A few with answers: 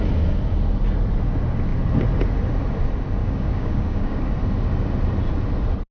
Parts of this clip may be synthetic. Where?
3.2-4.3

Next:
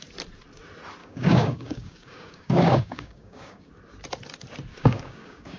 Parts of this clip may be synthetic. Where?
1.0-3.7; 4.7-5.6

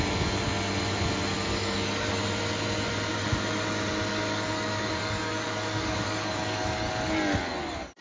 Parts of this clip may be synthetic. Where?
1.5-2.2; 4.1-6.9